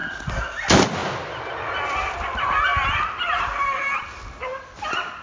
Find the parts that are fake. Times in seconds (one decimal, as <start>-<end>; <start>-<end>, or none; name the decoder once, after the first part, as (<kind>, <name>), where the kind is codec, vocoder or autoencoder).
none

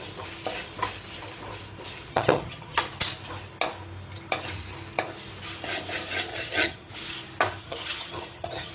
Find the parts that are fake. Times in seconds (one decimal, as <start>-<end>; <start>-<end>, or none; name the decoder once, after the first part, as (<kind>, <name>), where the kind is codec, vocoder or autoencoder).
2.1-2.8 (vocoder, HiFi-GAN); 6.3-6.9; 7.6-8.7

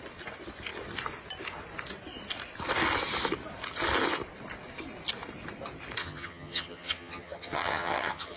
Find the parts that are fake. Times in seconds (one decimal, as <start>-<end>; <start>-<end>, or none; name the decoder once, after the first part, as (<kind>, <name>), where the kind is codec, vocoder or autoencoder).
6.0-8.4 (vocoder, HiFi-GAN)

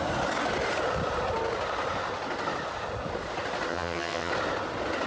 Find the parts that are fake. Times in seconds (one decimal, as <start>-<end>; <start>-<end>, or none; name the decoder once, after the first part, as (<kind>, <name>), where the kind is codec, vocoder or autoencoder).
3.7-4.3 (vocoder, HiFi-GAN)